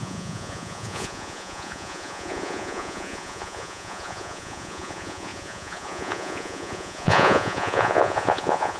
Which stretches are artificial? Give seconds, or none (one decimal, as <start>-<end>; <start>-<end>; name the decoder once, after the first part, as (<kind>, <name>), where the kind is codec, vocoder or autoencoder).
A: 0.0-8.8 (vocoder, Vocos)